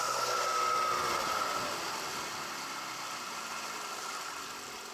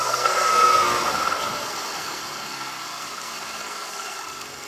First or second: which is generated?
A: second